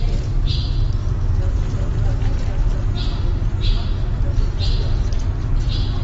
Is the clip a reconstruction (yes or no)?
no